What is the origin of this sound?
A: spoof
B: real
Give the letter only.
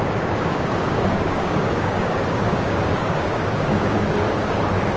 A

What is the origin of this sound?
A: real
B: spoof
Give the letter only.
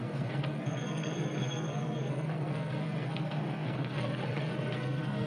B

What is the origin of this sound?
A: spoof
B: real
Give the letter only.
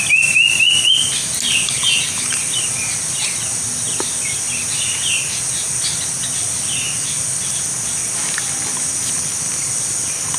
B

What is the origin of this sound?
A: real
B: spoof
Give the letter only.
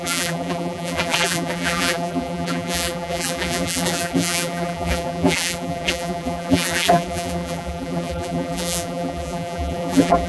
B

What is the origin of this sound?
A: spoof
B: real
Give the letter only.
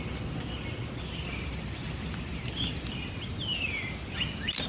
B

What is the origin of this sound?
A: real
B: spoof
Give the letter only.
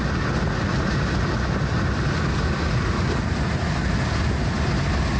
A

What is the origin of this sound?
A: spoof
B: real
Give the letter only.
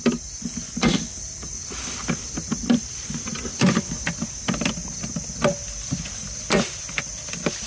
B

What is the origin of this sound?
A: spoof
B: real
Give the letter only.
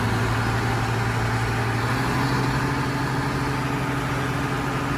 B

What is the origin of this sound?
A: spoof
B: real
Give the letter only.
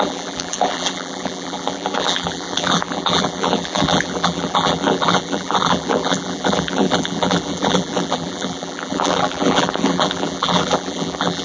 A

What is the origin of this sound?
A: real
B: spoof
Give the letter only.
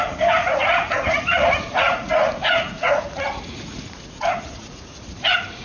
B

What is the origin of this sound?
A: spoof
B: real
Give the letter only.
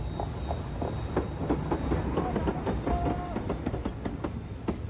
B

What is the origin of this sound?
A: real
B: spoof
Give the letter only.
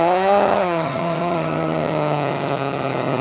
B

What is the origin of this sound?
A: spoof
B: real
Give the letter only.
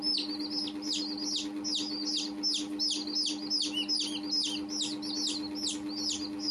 B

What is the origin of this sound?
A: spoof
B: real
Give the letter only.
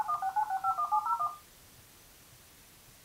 A